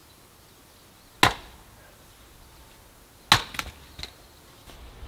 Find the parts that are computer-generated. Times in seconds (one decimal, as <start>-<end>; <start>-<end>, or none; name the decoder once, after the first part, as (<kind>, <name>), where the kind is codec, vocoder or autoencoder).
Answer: none